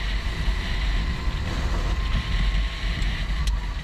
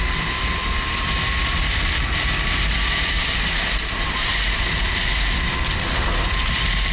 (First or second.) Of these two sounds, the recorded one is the first